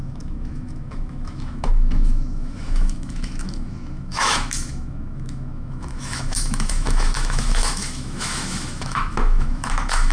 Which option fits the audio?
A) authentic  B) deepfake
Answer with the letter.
B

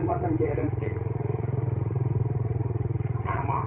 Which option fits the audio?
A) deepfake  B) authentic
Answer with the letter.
A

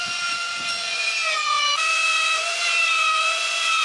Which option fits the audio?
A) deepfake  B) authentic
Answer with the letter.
A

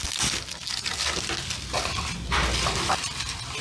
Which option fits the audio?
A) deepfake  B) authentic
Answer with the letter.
B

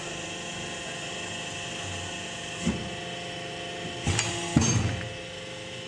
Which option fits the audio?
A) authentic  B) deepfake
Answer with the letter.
A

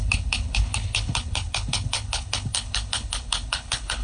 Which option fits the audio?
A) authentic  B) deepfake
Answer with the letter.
B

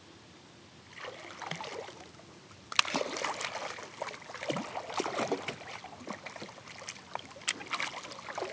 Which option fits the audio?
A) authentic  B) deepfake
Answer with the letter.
A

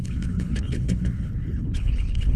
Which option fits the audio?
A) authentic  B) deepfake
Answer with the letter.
B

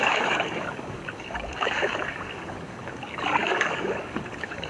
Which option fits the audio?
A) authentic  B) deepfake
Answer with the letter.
B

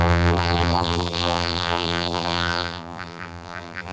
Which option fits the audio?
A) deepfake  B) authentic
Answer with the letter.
A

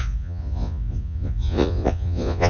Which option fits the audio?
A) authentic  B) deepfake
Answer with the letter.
B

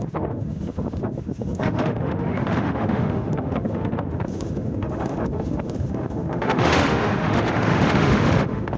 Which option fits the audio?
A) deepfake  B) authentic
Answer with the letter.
A